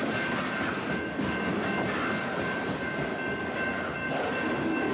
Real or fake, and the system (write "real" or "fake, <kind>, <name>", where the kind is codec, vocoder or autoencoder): real